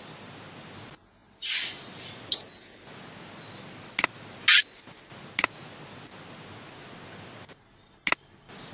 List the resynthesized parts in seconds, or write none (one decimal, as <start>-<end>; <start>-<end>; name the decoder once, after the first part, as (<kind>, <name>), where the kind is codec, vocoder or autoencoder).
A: none